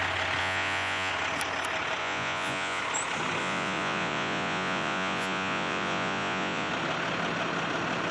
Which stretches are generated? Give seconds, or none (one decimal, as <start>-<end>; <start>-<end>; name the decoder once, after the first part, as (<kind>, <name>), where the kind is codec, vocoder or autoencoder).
0.4-1.1 (vocoder, Vocos); 2.0-2.8; 3.4-6.7